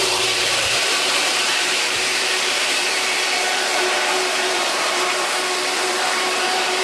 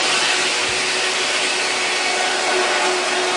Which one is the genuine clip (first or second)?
second